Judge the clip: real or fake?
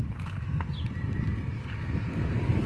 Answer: real